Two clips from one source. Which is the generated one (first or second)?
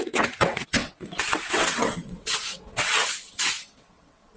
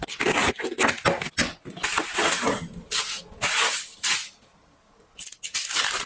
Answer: first